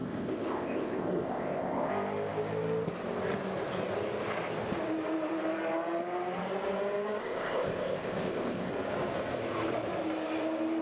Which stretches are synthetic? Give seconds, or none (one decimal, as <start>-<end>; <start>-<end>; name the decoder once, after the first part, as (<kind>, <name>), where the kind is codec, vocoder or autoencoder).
0.0-1.9 (codec, ZipCodec); 7.2-8.7